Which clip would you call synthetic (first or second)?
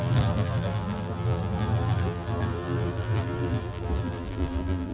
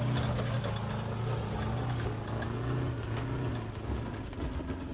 first